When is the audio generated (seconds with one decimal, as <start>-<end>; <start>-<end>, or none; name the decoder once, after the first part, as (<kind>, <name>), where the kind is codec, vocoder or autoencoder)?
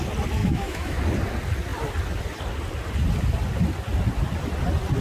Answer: 0.4-1.0 (autoencoder, DAC-VAE)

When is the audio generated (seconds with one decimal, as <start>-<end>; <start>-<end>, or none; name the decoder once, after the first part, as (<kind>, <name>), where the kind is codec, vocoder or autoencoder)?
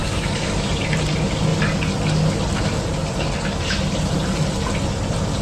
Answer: 0.0-0.7 (codec, DAC)